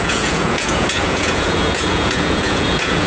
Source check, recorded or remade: remade